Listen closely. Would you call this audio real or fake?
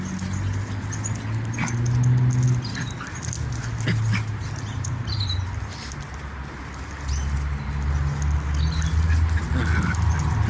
real